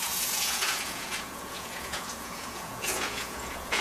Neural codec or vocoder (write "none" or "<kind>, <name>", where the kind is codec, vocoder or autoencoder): vocoder, Vocos